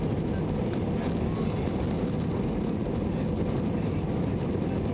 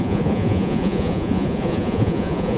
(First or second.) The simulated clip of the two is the second